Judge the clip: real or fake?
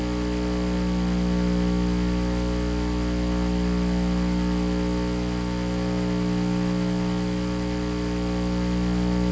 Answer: real